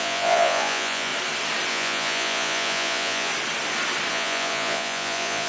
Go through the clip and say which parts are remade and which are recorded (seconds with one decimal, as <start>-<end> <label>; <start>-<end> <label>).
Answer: 0.0-1.1 remade; 1.1-1.7 recorded; 1.7-3.3 remade; 3.3-4.1 recorded; 4.1-5.5 remade